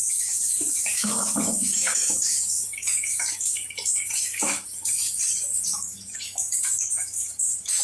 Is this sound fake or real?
fake